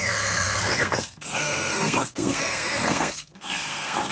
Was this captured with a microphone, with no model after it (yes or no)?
no